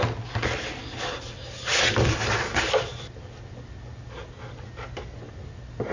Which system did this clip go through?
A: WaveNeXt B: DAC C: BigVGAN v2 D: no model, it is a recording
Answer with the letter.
D